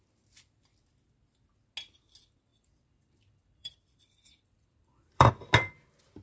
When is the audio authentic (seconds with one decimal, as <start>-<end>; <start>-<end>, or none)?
0.0-2.5; 5.3-6.2